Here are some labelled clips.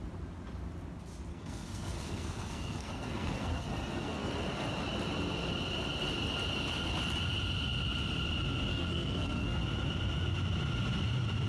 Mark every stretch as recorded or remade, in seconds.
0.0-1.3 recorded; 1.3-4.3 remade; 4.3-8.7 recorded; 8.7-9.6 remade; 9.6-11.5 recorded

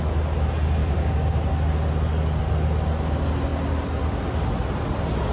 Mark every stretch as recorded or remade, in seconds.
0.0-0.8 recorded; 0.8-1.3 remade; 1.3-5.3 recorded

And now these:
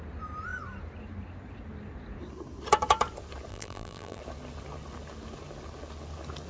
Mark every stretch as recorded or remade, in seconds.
0.0-3.5 recorded; 3.5-4.2 remade; 4.2-6.5 recorded